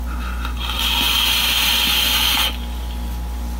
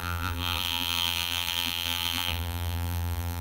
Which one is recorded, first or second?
first